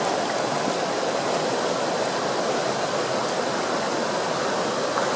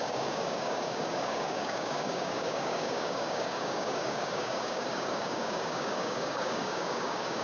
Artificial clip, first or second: second